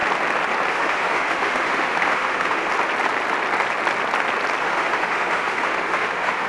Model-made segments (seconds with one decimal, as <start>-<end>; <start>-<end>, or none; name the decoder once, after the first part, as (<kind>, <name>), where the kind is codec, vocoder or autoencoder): 0.7-2.7 (autoencoder, DAC-VAE); 4.6-6.5